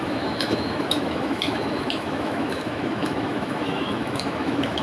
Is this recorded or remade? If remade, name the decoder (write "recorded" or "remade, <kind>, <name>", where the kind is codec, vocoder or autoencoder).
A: remade, autoencoder, DAC-VAE